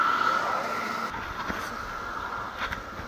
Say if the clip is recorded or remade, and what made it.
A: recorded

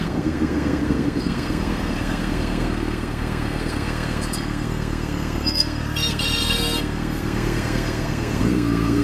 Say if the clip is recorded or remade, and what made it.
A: remade, codec, SNAC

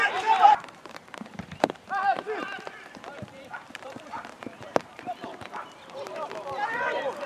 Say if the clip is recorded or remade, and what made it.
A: remade, vocoder, BigVGAN v2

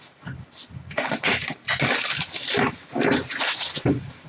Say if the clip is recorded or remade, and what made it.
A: recorded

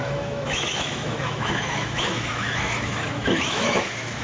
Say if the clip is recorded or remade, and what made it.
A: remade, autoencoder, DAC-VAE